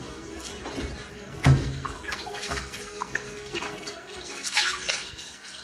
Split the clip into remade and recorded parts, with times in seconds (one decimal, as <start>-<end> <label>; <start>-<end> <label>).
0.0-0.5 remade; 0.5-1.1 recorded; 1.1-5.6 remade